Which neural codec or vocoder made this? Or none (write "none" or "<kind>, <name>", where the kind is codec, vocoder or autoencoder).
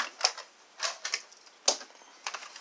none